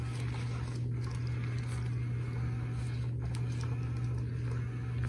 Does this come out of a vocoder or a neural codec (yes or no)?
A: no